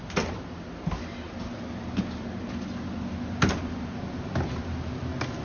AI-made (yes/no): no